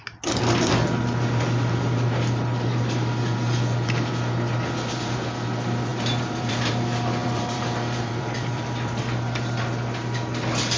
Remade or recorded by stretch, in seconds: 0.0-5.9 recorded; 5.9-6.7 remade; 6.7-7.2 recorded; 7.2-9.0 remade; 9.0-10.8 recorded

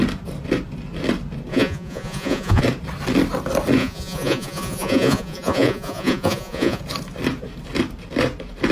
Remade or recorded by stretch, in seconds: 0.0-1.5 recorded; 1.5-2.6 remade; 2.6-3.8 recorded; 3.8-6.8 remade; 6.8-8.7 recorded

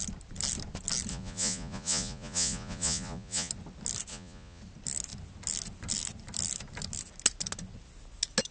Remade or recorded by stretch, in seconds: 0.0-1.1 recorded; 1.1-3.5 remade; 3.5-4.1 recorded; 4.1-4.6 remade; 4.6-8.5 recorded